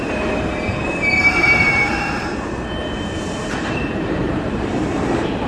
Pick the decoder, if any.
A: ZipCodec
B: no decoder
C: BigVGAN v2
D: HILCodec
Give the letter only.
C